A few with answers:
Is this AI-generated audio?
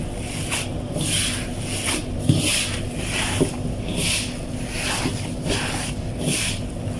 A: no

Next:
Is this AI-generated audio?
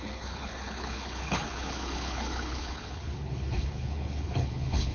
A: yes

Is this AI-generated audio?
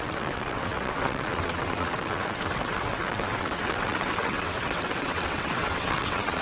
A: yes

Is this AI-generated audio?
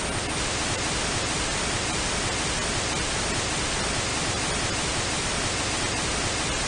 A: no